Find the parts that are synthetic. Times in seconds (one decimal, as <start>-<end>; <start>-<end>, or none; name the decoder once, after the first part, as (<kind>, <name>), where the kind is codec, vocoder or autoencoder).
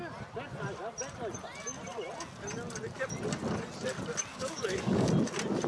4.3-5.1 (codec, DAC)